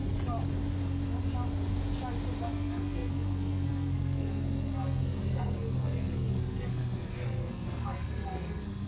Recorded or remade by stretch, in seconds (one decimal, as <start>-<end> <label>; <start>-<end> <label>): 0.0-2.4 recorded; 2.4-8.9 remade